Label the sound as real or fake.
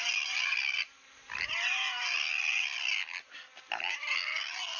real